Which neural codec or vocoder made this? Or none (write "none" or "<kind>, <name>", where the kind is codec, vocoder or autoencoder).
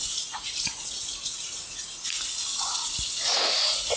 vocoder, Vocos